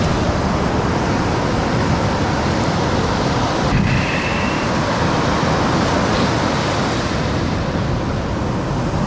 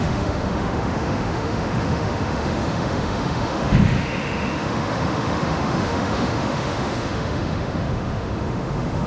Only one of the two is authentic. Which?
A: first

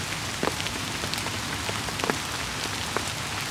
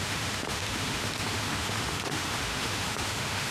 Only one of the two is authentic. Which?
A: first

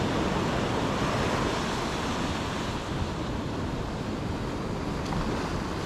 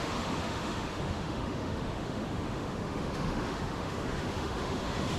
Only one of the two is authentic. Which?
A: first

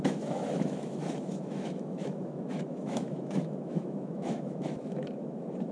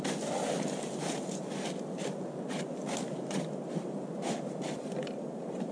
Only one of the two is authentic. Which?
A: second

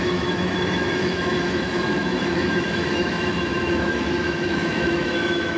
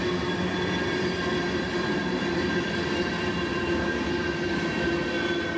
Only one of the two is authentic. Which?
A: second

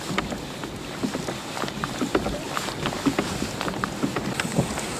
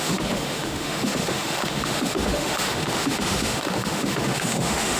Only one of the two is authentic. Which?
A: first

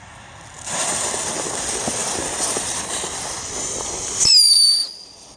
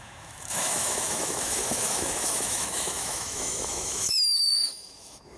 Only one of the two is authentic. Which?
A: first